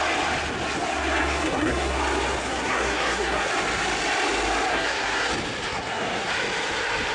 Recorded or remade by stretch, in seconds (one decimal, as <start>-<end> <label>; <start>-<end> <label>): 0.0-1.2 recorded; 1.2-2.0 remade; 2.0-2.4 recorded; 2.4-3.5 remade; 3.5-4.7 recorded; 4.7-5.3 remade; 5.3-5.7 recorded; 5.7-6.3 remade; 6.3-7.1 recorded